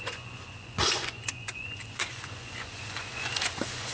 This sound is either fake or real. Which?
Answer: fake